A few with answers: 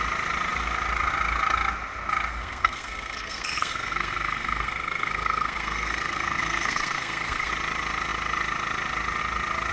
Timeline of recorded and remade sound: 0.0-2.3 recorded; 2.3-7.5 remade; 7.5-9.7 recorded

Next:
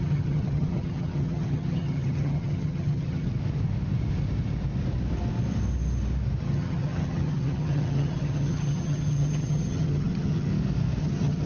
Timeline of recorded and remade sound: 0.0-3.3 remade; 3.3-6.4 recorded; 6.4-10.5 remade; 10.5-11.0 recorded; 11.0-11.5 remade

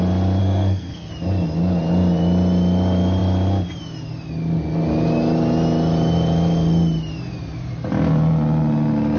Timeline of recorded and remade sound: 0.0-0.4 recorded; 0.4-1.1 remade; 1.1-9.2 recorded

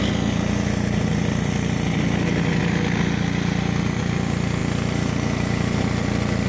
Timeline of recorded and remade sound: 0.0-6.5 recorded

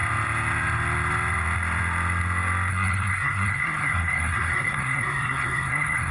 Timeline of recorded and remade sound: 0.0-2.7 recorded; 2.7-6.1 remade

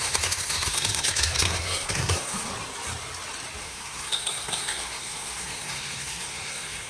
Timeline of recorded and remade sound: 0.0-2.5 remade; 2.5-3.6 recorded; 3.6-6.9 remade

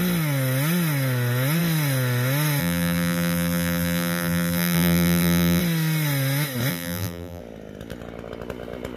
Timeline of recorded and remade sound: 0.0-2.6 recorded; 2.6-5.6 remade; 5.6-6.7 recorded; 6.7-7.4 remade; 7.4-9.0 recorded